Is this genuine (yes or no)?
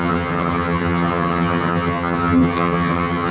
no